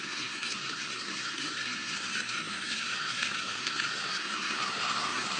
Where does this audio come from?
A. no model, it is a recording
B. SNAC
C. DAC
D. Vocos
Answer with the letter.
B